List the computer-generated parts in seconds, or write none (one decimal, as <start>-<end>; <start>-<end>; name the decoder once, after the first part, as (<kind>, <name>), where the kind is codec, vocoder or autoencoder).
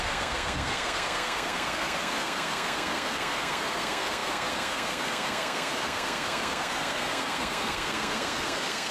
0.0-8.9 (codec, SNAC)